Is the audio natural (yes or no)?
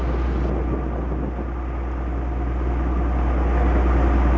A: yes